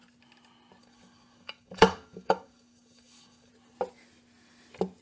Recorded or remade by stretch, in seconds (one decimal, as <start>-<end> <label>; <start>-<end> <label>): 0.0-0.8 recorded; 0.8-3.5 remade; 3.5-5.0 recorded